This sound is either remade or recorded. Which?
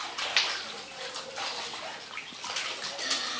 recorded